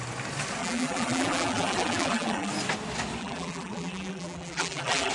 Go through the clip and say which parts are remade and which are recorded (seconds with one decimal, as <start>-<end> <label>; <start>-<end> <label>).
0.0-0.6 recorded; 0.6-2.5 remade; 2.5-3.2 recorded; 3.2-5.1 remade